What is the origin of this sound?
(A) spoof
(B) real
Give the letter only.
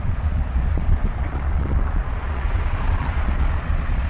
A